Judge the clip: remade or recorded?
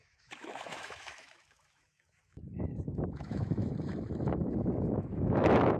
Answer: remade